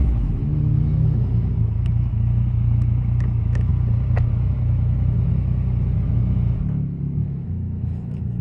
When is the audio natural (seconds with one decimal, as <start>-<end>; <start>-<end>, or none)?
3.7-4.3